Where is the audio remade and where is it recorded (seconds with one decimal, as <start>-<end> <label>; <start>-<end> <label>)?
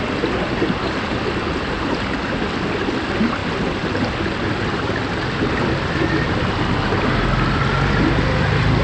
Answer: 0.0-8.8 recorded